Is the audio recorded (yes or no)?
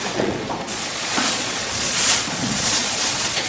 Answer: no